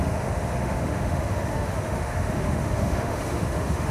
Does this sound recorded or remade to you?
remade